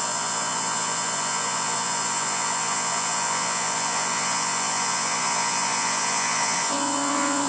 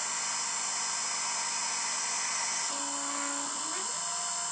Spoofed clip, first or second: first